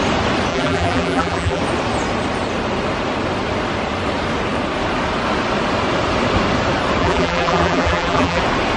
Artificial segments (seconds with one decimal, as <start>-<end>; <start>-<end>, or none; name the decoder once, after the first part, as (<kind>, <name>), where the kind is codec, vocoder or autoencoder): 0.5-1.6 (vocoder, BigVGAN v2); 7.0-8.4